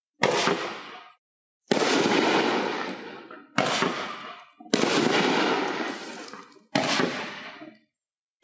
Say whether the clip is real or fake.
real